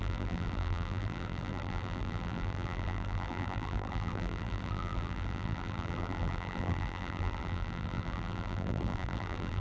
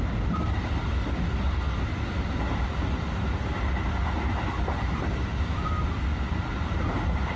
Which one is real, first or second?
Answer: second